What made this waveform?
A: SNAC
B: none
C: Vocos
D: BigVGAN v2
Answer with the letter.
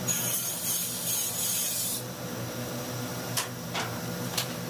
D